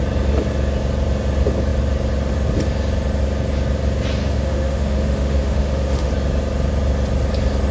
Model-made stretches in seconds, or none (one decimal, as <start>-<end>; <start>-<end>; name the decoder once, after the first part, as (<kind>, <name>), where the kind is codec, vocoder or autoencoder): 4.2-6.1 (autoencoder, DAC-VAE)